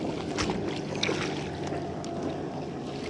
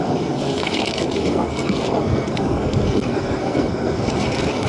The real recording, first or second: first